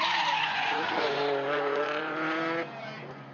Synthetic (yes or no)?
yes